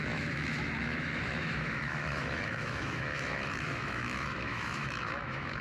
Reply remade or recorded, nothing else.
remade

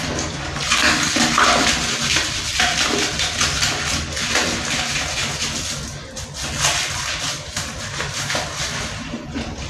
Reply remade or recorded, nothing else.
recorded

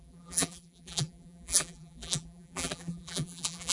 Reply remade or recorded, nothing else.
remade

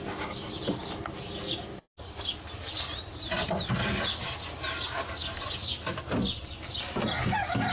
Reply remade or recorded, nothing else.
recorded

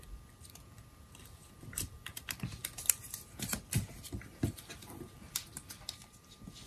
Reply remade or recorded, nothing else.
remade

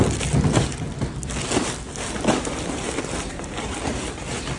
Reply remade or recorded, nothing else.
remade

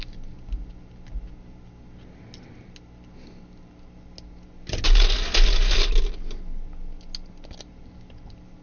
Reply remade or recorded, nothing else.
recorded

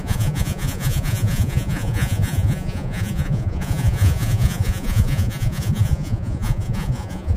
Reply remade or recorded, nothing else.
remade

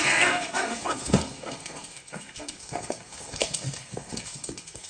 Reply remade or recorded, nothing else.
remade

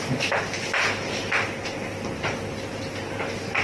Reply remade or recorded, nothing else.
recorded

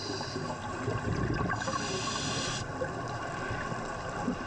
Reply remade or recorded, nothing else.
recorded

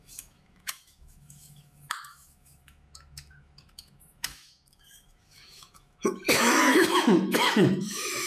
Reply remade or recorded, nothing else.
remade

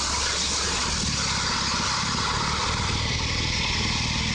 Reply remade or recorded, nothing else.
recorded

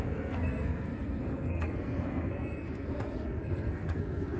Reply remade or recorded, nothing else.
remade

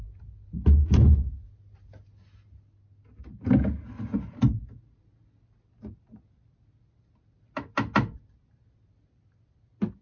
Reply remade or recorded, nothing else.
recorded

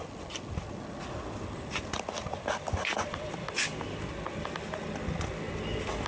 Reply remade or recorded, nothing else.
recorded